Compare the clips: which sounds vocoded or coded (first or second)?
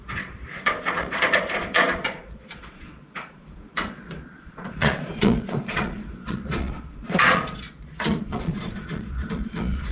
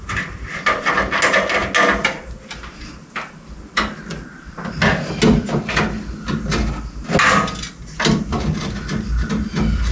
first